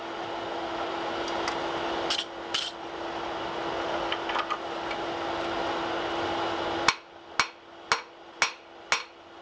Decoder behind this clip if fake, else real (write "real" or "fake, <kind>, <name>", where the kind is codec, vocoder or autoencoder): real